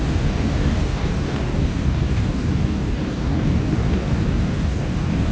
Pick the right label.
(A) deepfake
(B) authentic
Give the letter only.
A